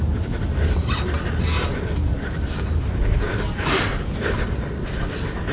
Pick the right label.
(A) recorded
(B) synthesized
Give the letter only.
A